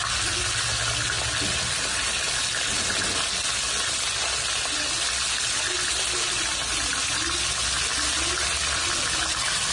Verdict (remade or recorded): recorded